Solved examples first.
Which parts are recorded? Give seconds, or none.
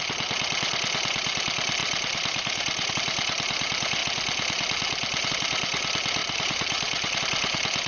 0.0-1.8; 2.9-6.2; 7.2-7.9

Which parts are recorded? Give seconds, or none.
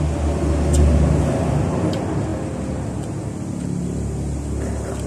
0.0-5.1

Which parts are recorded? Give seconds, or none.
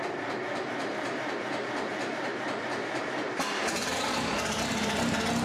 0.0-0.9; 4.1-5.4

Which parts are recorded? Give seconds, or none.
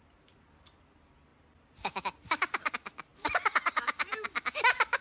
0.0-1.3; 2.7-3.1; 4.6-5.0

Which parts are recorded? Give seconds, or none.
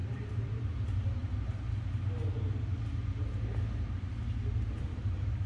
1.2-4.5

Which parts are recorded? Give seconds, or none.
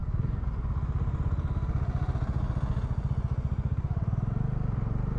0.0-5.2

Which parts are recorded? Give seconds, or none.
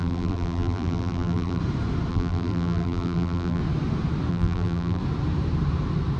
1.6-2.1; 3.6-4.3; 5.0-6.2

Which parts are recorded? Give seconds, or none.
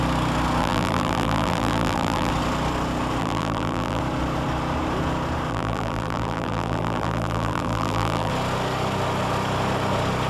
0.0-0.6; 2.3-3.2; 4.0-5.5; 8.3-10.3